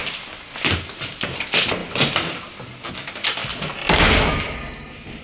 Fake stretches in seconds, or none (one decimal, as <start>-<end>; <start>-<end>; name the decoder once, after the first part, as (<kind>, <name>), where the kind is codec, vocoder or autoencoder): none